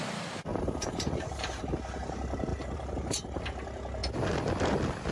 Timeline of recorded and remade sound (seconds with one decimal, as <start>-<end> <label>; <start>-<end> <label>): 0.0-0.5 recorded; 0.5-1.7 remade; 1.7-2.5 recorded; 2.5-3.4 remade; 3.4-5.1 recorded